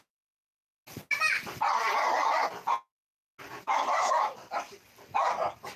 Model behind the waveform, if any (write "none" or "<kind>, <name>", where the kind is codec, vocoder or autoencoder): none